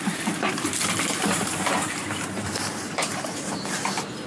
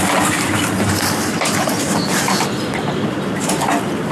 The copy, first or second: first